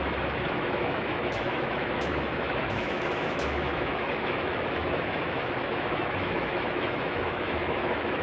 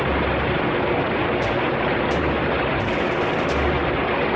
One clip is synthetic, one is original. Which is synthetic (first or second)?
first